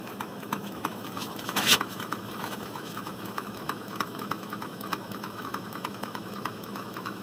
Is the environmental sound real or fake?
fake